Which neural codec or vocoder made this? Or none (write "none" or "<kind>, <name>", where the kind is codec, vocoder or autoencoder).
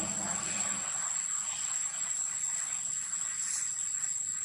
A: none